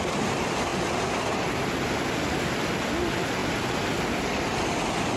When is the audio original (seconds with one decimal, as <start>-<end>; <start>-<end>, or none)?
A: 0.0-5.2